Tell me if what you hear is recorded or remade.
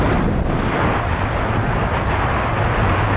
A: recorded